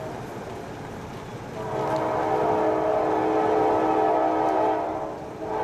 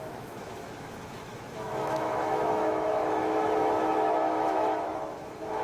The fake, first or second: second